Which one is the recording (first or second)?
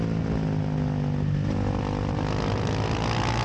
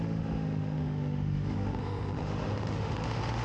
first